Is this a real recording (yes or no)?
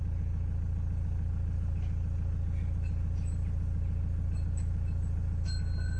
yes